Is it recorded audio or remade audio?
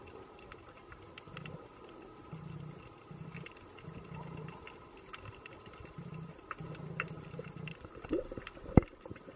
recorded